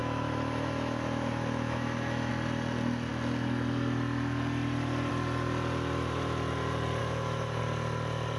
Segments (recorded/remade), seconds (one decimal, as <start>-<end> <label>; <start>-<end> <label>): 0.0-2.3 remade; 2.3-7.0 recorded; 7.0-7.6 remade; 7.6-8.4 recorded